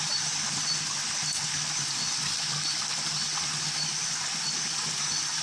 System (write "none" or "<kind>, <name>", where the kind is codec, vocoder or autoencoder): none